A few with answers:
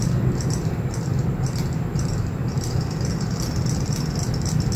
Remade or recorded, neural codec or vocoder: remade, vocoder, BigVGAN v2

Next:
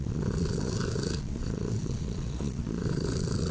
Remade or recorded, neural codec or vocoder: remade, vocoder, Vocos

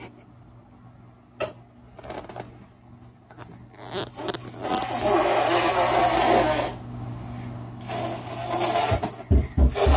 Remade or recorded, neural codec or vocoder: recorded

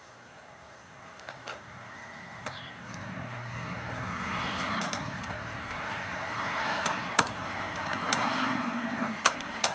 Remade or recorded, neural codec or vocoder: remade, codec, SNAC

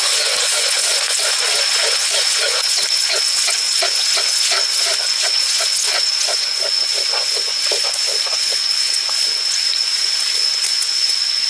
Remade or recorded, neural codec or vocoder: remade, vocoder, Vocos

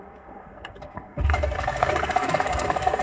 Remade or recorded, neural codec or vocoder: remade, codec, SNAC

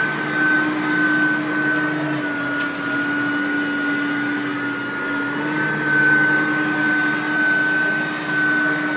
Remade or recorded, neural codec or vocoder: recorded